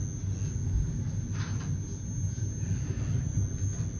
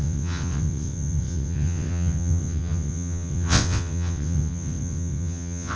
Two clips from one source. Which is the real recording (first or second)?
first